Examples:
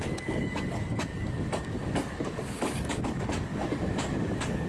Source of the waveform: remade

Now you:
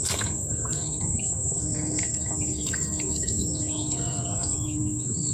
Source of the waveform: remade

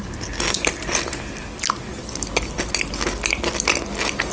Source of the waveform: recorded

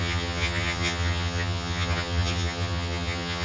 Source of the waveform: remade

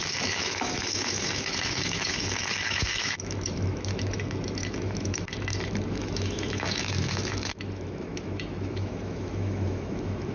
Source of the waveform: remade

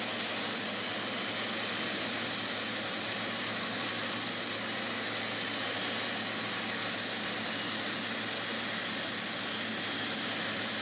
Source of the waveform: recorded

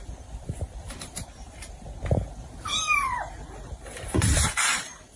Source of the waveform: remade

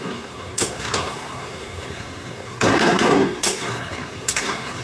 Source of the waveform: remade